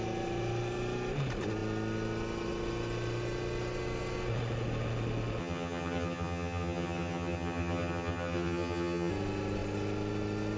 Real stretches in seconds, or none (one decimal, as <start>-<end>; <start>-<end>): 0.0-5.4; 9.1-10.6